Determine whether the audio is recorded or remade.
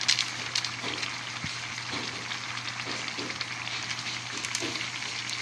recorded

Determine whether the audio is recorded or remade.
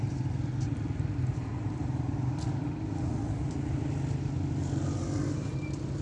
recorded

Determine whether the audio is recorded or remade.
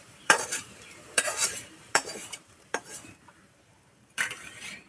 remade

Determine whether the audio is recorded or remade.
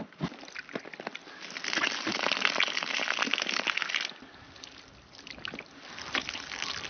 recorded